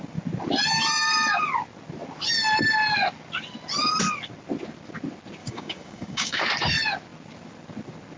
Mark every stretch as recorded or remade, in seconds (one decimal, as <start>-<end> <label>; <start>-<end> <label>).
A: 0.0-5.4 recorded; 5.4-6.4 remade; 6.4-8.2 recorded